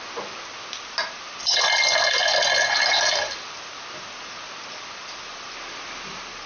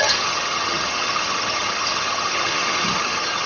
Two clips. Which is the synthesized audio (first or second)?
second